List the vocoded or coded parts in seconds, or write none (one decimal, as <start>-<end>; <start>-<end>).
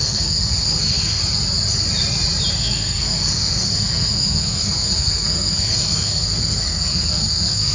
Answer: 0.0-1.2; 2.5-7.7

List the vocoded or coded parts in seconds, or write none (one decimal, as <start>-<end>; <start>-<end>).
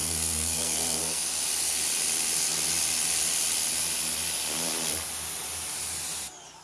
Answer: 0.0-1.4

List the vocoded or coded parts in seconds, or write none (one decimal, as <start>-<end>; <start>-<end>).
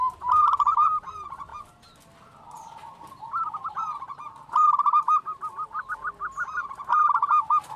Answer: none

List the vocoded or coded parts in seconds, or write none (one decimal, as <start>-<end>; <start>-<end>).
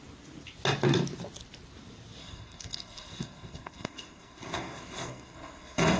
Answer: 2.2-6.0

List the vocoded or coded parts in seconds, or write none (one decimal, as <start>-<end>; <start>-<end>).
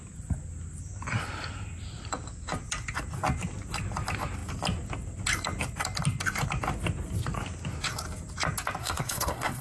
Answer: 8.8-9.6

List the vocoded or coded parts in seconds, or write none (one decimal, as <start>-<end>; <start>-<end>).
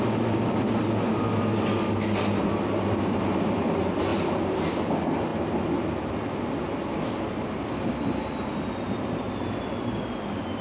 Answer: none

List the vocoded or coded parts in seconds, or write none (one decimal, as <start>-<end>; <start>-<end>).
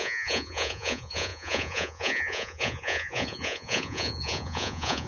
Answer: 0.0-5.1